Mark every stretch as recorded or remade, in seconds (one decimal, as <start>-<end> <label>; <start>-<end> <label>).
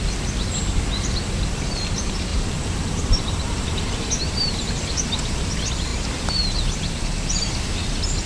0.0-2.3 recorded; 2.3-4.6 remade; 4.6-8.3 recorded